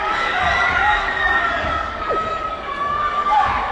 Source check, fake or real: fake